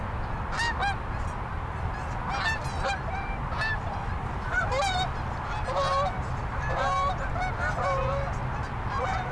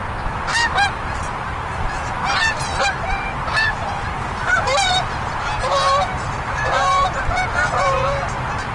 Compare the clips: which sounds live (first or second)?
first